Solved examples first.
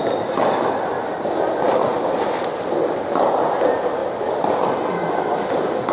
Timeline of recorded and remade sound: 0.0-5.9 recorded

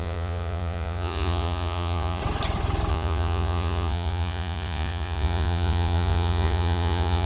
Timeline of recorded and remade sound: 0.0-2.2 remade; 2.2-2.9 recorded; 2.9-7.3 remade

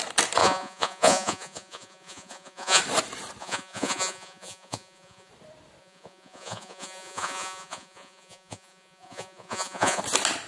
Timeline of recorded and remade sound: 0.0-0.4 recorded; 0.4-2.8 remade; 2.8-3.4 recorded; 3.4-5.3 remade; 5.3-5.8 recorded; 5.8-10.0 remade; 10.0-10.5 recorded